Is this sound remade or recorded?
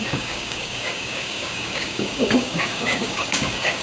remade